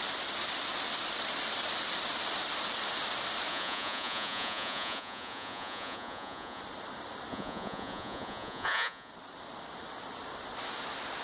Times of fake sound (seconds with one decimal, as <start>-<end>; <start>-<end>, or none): 3.5-6.6; 7.3-9.1